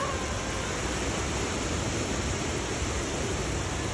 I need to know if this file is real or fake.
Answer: real